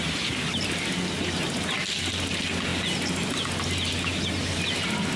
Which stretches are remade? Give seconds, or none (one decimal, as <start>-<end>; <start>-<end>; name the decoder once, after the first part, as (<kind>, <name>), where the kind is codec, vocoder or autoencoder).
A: none